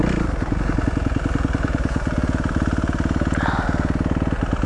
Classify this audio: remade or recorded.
recorded